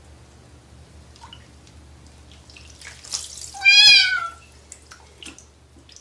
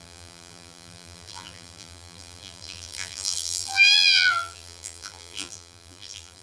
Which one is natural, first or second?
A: first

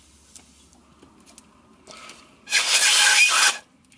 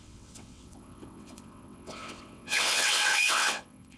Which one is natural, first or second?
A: first